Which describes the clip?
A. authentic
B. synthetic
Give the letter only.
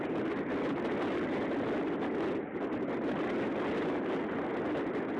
A